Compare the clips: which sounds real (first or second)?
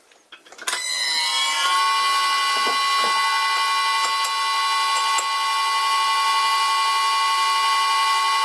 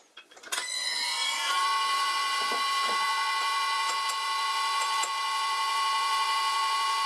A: first